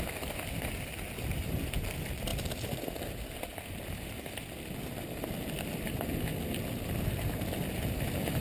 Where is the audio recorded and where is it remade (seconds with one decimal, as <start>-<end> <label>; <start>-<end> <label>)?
0.0-8.4 recorded